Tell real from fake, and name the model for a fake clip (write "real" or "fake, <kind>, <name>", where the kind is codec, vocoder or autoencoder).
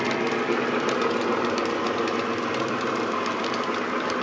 real